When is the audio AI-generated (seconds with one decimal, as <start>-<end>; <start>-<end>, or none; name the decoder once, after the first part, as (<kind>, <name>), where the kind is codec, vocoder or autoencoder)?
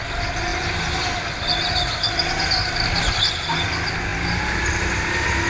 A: none